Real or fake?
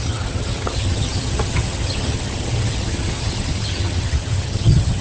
fake